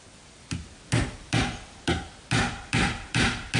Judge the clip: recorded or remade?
recorded